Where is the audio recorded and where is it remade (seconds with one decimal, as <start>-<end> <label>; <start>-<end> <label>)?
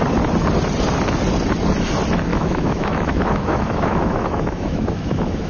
0.0-2.3 recorded; 2.3-5.5 remade